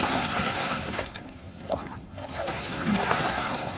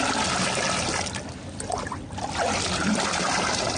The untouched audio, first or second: second